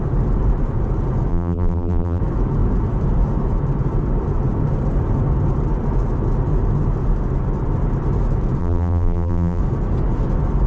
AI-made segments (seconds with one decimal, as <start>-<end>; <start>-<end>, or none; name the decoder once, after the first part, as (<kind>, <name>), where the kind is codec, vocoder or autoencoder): 1.3-2.2 (vocoder, BigVGAN v2); 8.6-9.6